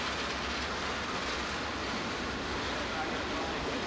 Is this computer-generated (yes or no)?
no